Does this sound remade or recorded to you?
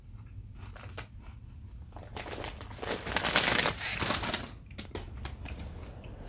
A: recorded